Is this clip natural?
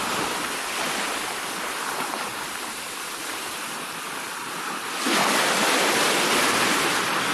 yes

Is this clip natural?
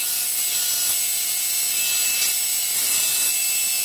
yes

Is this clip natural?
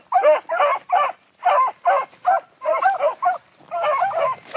yes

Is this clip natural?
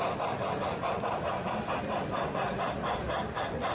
no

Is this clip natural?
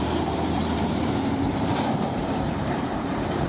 no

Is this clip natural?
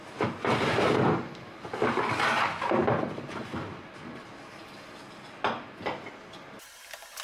yes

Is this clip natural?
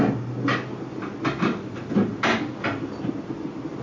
yes